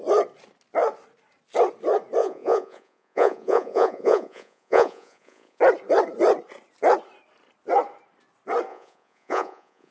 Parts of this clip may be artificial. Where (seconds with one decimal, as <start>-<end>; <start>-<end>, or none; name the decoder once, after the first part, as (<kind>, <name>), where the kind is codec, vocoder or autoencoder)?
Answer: 2.2-5.6 (vocoder, Vocos); 8.7-9.9